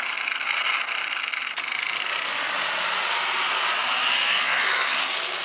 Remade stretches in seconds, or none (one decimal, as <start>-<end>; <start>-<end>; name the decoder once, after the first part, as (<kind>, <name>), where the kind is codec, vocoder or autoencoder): none